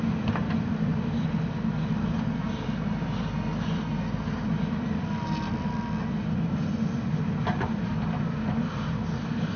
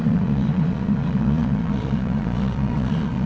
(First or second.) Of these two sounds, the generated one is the second